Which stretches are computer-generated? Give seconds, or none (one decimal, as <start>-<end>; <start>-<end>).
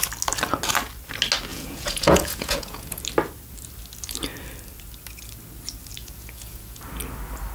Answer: 1.5-3.0; 6.0-6.8